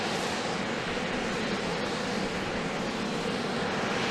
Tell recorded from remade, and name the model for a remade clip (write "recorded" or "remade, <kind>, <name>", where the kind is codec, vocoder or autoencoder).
recorded